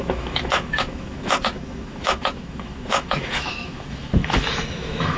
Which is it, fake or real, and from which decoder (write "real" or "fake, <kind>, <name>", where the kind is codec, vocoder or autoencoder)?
fake, autoencoder, DAC-VAE